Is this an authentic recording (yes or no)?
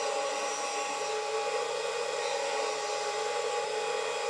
yes